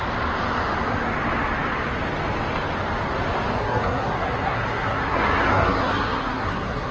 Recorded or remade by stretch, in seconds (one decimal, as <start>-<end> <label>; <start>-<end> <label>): 0.0-3.6 recorded; 3.6-6.9 remade

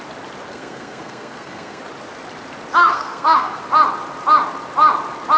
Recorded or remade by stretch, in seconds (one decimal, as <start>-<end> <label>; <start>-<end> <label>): 0.0-0.5 recorded; 0.5-1.8 remade; 1.8-2.8 recorded; 2.8-3.6 remade; 3.6-5.4 recorded

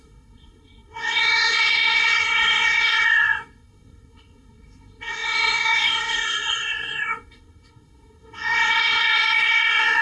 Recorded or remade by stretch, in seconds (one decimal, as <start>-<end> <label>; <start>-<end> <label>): 0.0-10.0 remade

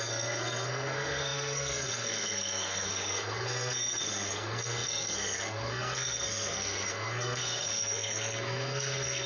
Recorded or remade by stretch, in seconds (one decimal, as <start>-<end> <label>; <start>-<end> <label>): 0.0-9.3 remade

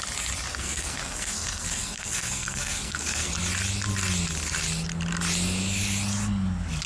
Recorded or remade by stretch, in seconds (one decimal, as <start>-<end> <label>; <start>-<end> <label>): 0.0-0.5 recorded; 0.5-3.3 remade; 3.3-6.9 recorded

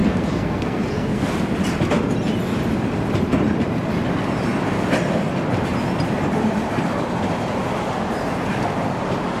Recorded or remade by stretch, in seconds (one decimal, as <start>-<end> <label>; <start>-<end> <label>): 0.0-1.3 remade; 1.3-9.4 recorded

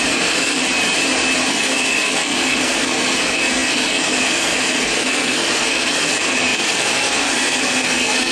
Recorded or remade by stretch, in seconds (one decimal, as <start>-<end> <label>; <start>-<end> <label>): 0.0-0.6 remade; 0.6-1.5 recorded; 1.5-8.3 remade

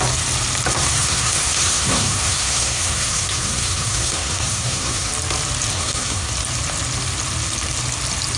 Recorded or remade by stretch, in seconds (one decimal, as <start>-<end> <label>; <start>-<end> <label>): 0.0-0.7 recorded; 0.7-5.1 remade; 5.1-5.7 recorded; 5.7-6.3 remade; 6.3-8.4 recorded